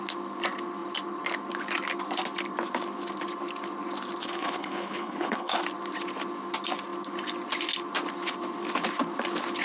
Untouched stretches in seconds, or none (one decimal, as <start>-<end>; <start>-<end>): 0.0-4.2; 5.6-9.6